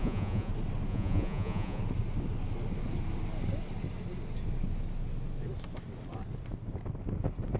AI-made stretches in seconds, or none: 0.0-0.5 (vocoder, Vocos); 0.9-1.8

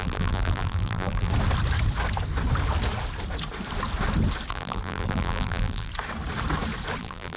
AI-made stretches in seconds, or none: 0.0-1.3 (vocoder, BigVGAN v2); 4.5-5.9; 7.0-7.4

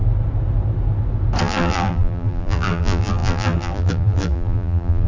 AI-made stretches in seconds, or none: 1.4-5.1 (vocoder, BigVGAN v2)

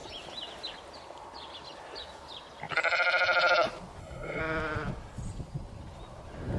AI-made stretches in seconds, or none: 4.0-4.4 (codec, SNAC)

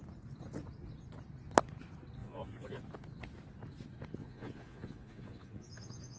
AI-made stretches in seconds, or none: 2.2-2.8 (vocoder, Vocos); 4.2-6.2

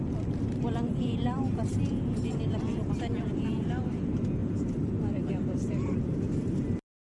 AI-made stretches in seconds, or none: 0.0-4.4 (vocoder, BigVGAN v2); 5.3-7.1

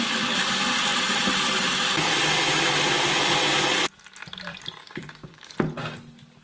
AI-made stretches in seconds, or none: 4.8-5.5 (codec, DAC)

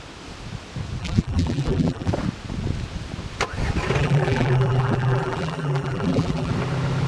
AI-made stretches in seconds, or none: 1.0-2.1 (vocoder, BigVGAN v2); 4.0-6.5